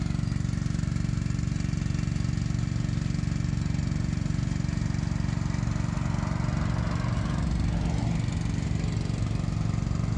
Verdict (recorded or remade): recorded